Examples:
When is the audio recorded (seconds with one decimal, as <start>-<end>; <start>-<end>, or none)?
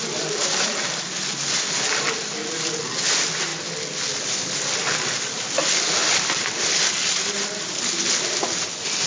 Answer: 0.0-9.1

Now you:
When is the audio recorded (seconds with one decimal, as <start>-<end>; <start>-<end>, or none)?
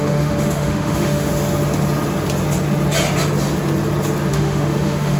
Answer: 1.3-4.3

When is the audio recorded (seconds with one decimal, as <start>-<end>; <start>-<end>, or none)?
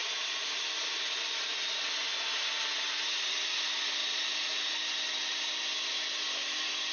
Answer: 0.8-4.0; 4.7-6.9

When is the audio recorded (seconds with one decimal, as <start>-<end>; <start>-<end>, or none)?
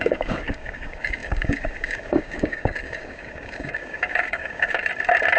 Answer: 4.8-5.4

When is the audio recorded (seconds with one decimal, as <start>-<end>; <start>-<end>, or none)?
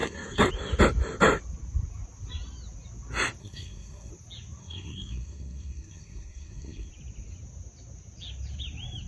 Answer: 0.5-3.4; 4.1-4.6; 6.9-9.1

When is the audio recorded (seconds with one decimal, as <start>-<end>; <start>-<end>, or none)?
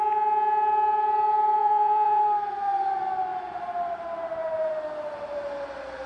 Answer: 0.0-1.6; 2.2-6.1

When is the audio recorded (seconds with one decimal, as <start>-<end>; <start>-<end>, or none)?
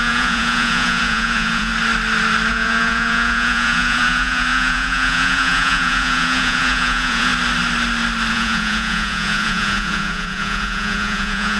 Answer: 1.7-2.5; 7.3-8.3